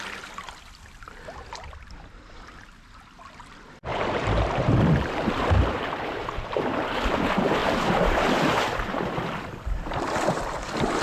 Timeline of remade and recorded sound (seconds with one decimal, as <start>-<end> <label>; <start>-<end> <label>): 0.0-3.9 recorded; 3.9-6.6 remade; 6.6-7.6 recorded; 7.6-9.4 remade; 9.4-11.0 recorded